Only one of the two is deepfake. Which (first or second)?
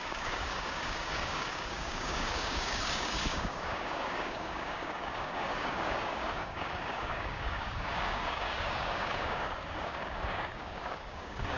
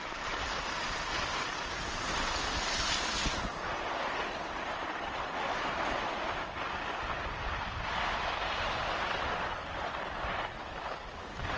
first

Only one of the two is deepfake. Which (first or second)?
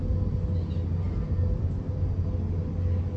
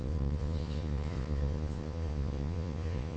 second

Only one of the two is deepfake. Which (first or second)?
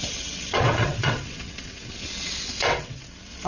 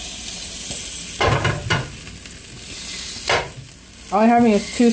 first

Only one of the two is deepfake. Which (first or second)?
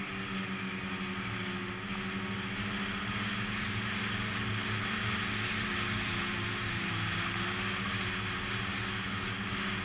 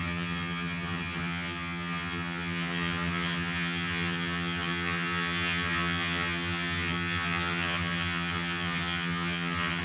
second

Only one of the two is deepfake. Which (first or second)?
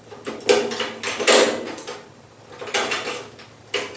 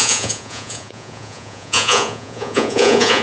second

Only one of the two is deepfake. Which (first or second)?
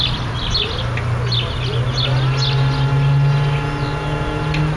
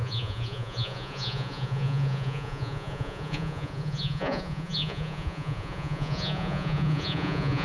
second